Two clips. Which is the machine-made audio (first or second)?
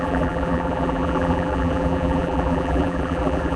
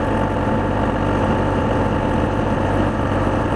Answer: first